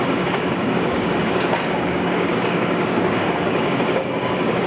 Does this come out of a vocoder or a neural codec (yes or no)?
yes